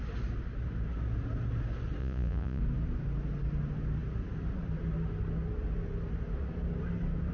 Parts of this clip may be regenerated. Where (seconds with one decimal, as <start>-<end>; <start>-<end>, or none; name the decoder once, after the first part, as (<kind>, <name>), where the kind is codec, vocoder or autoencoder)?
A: 2.0-2.6 (vocoder, Vocos)